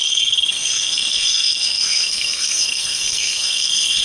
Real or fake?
fake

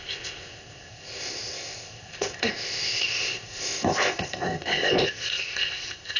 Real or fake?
fake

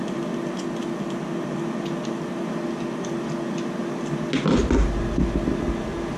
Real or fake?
real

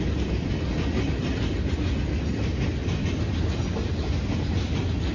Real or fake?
real